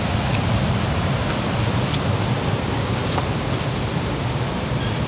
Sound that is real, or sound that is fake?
real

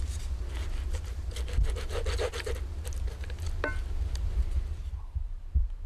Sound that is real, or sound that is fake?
real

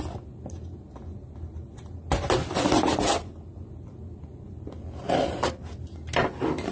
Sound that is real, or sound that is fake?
real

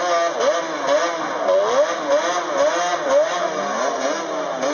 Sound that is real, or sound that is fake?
real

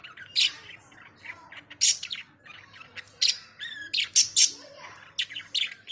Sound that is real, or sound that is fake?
real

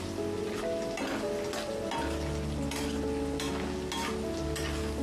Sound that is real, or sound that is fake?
real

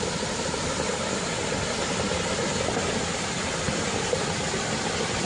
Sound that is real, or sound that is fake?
real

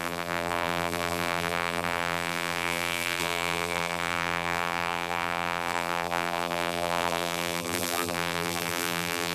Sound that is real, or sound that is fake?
fake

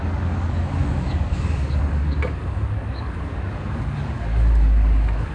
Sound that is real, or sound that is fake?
fake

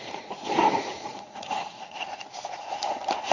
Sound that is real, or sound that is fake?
fake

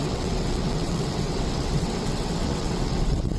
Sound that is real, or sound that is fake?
fake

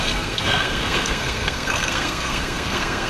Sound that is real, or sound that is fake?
fake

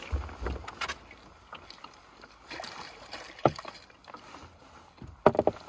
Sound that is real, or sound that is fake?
real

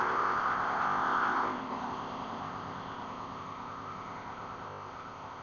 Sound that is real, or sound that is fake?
fake